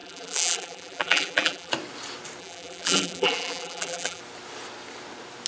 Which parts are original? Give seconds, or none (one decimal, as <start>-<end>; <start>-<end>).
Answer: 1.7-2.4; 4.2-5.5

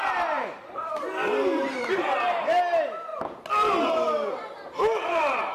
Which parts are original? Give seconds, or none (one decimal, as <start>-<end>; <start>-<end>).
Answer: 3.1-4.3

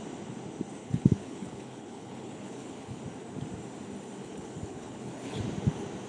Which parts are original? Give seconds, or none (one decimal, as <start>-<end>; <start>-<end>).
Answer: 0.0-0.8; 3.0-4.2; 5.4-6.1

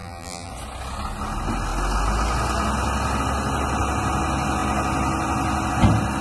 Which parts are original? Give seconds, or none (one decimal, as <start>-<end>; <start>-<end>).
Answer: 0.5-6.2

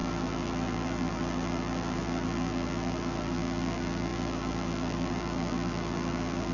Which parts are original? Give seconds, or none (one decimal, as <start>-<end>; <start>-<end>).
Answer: none

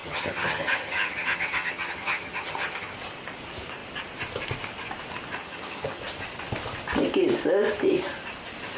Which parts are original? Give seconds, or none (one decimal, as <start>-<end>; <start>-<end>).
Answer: 2.9-5.4; 6.0-8.8

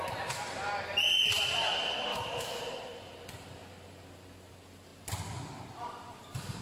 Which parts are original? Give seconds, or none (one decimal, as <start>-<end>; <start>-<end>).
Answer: 0.0-2.1; 2.6-6.6